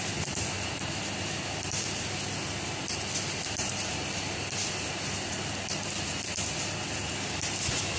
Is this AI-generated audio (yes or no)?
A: no